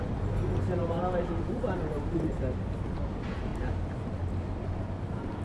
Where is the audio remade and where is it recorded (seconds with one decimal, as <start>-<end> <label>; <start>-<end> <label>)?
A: 0.0-0.8 recorded; 0.8-2.3 remade; 2.3-5.4 recorded